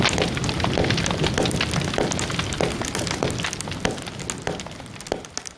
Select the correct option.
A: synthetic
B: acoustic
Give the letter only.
B